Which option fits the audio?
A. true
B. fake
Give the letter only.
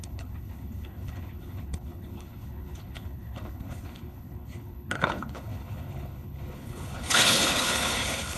B